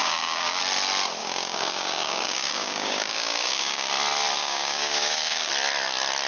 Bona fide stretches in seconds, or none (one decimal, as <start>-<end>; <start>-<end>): 0.6-1.2; 3.9-4.4; 5.5-6.3